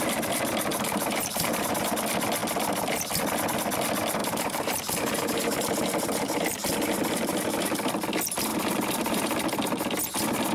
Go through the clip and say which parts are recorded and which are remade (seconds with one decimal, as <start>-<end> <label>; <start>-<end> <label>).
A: 0.0-0.7 recorded; 0.7-1.9 remade; 1.9-4.2 recorded; 4.2-7.9 remade; 7.9-8.5 recorded; 8.5-9.4 remade; 9.4-10.5 recorded